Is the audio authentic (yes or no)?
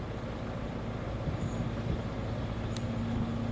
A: yes